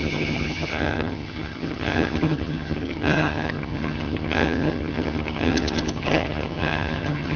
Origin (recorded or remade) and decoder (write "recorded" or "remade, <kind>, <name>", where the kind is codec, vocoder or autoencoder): remade, vocoder, HiFi-GAN